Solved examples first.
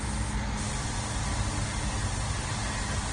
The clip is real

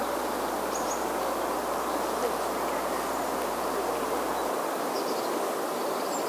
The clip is real